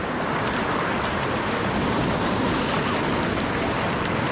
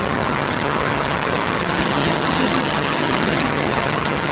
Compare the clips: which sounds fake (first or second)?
second